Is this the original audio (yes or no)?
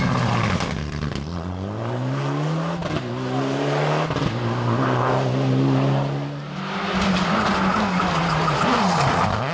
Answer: yes